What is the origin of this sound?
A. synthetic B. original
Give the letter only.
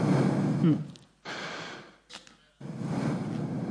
B